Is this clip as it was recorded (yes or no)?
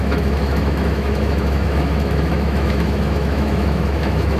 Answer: no